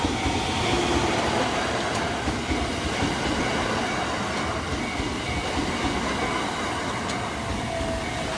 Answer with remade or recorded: recorded